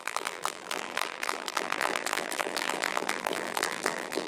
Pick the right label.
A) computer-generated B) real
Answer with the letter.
A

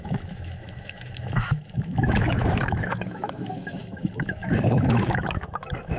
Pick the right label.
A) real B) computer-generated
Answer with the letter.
B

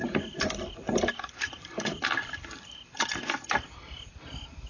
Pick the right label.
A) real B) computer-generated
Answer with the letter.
A